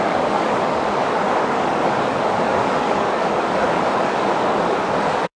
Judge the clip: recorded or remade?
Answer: remade